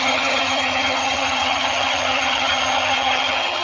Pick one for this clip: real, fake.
fake